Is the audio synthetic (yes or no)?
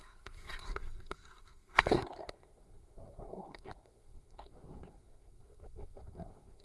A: yes